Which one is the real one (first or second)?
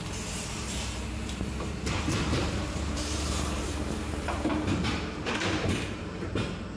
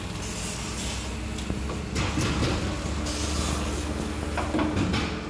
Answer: second